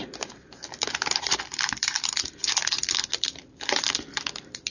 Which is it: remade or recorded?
remade